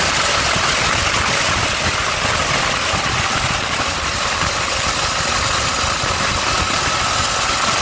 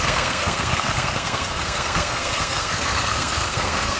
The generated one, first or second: second